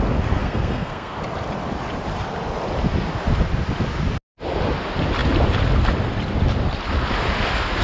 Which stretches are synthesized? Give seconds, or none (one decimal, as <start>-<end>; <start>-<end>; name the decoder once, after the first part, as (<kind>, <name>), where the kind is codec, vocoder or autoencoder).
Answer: 0.4-1.2 (codec, SNAC)

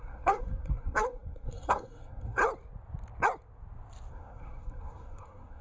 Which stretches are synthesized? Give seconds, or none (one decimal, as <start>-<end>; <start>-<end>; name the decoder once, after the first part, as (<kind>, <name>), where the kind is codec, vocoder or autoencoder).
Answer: 0.0-2.4 (codec, SNAC); 4.1-5.6